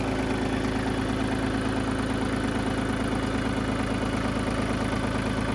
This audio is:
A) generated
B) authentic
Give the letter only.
B